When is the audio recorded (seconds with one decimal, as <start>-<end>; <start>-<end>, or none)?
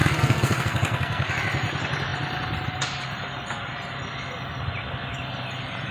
1.3-5.9